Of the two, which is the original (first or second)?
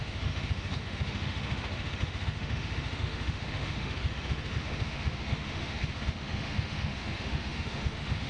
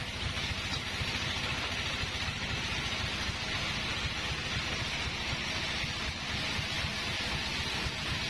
second